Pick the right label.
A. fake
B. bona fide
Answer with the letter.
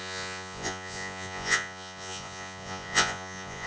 A